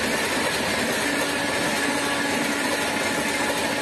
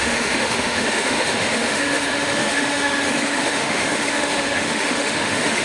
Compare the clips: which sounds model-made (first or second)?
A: second